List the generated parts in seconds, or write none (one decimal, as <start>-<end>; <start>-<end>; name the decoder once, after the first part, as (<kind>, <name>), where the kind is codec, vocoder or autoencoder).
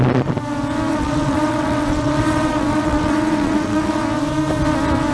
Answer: 0.9-4.0 (vocoder, WaveNeXt)